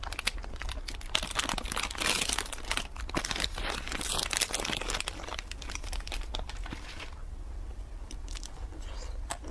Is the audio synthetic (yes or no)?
no